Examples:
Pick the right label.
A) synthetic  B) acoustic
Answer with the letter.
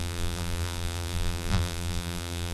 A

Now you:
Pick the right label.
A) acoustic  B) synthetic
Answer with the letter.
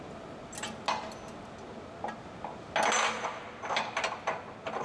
A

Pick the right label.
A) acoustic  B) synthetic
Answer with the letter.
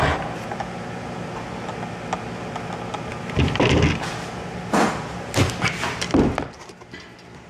A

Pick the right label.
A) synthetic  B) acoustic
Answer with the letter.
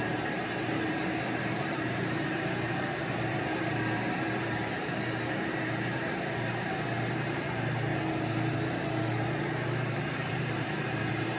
A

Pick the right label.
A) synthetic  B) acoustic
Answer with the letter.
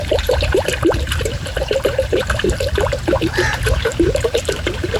A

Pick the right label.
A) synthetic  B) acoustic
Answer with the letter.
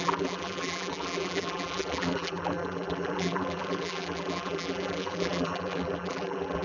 A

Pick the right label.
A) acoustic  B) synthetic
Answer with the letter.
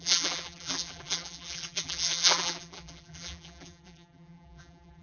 B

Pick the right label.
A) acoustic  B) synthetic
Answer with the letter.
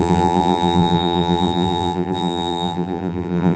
B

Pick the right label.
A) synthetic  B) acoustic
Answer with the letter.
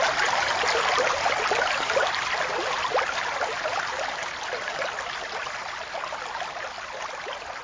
A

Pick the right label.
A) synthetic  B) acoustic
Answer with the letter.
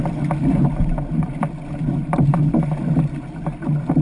B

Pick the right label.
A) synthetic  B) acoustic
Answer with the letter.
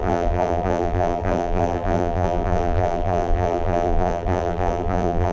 A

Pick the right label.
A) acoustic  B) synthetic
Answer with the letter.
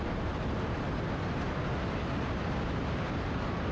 A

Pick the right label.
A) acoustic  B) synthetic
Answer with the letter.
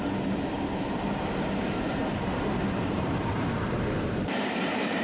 B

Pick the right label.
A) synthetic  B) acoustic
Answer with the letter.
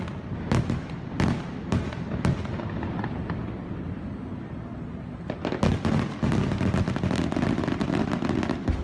B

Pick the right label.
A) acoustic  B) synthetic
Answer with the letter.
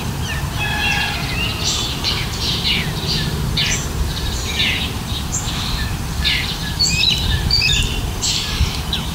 A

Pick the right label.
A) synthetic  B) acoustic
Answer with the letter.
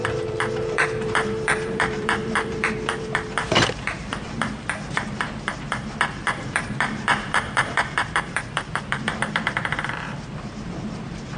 A